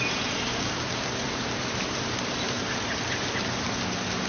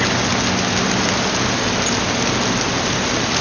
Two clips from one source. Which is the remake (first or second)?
first